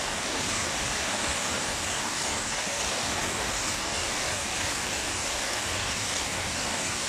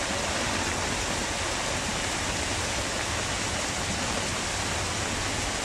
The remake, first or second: first